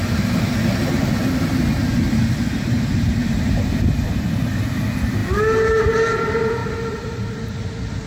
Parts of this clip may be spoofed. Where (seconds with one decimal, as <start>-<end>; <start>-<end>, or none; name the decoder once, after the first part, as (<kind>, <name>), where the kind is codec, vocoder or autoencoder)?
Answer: 6.6-7.6 (vocoder, BigVGAN v2)